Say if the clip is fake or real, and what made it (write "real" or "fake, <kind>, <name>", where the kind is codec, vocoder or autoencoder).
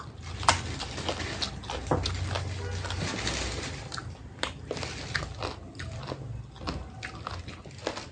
real